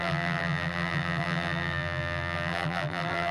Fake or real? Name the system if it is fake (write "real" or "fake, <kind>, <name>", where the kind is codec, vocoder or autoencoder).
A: fake, vocoder, BigVGAN v2